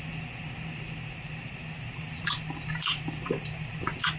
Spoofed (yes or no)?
no